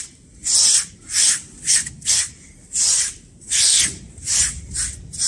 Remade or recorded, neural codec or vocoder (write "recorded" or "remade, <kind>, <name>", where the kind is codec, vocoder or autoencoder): recorded